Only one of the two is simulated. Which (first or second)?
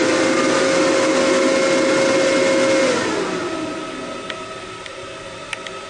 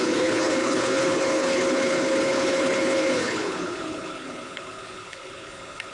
second